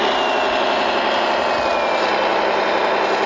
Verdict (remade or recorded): recorded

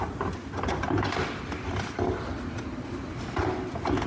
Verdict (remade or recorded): recorded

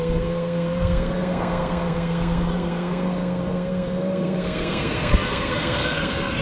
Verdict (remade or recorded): remade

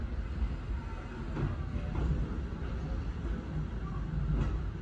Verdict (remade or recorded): recorded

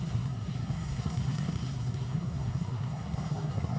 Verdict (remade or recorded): remade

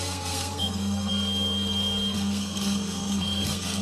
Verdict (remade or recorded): remade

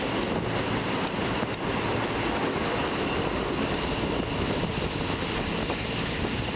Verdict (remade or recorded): recorded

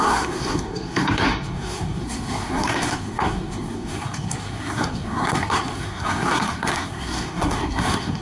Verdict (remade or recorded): remade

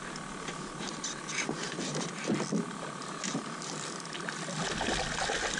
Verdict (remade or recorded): recorded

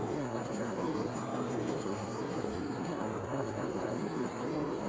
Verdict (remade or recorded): remade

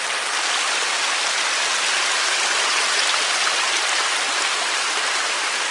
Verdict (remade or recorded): recorded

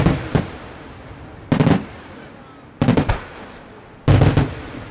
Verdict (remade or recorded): recorded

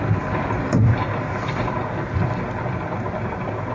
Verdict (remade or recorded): recorded